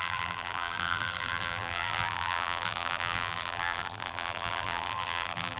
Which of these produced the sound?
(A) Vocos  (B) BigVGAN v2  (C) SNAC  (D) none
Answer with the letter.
B